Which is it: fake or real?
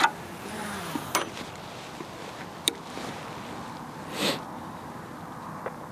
real